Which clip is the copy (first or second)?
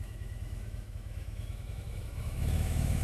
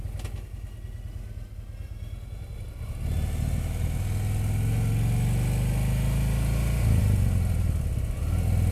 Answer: first